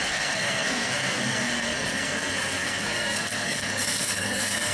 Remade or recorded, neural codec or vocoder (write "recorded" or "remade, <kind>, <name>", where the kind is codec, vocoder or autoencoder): remade, codec, SNAC